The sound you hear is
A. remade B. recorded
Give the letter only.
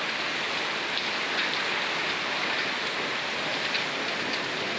B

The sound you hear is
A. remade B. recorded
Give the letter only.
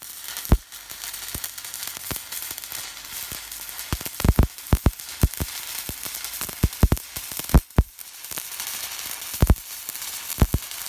B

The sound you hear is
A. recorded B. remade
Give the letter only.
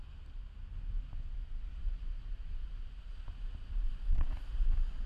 A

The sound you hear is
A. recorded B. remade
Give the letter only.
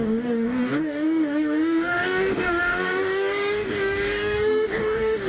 B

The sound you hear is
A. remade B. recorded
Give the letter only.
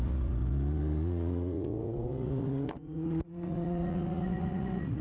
A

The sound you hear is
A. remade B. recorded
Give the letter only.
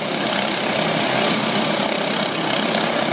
B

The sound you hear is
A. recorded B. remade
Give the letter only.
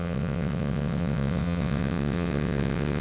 B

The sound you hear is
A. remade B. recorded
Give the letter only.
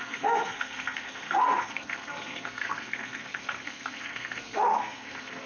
A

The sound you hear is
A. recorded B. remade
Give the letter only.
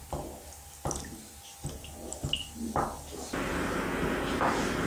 A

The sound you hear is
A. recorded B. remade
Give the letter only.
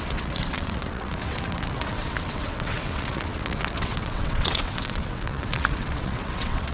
B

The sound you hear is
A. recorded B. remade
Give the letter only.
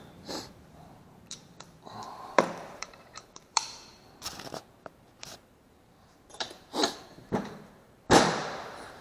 B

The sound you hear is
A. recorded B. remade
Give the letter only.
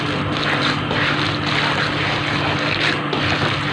A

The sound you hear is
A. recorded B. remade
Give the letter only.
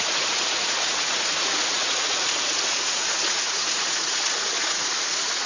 B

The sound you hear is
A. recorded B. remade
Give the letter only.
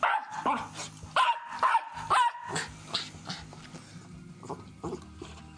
A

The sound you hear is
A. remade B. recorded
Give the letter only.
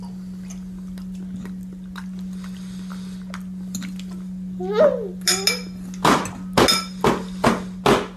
B